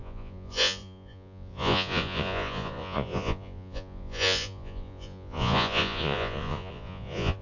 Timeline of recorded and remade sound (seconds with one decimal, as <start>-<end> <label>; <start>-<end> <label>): 0.0-7.4 remade